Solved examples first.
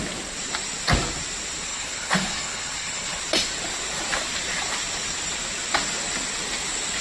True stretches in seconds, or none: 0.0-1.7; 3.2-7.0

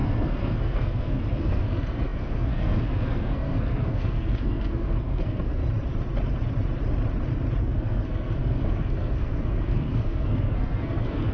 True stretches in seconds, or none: 5.6-7.6